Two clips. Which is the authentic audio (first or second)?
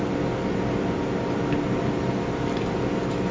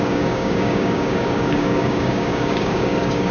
first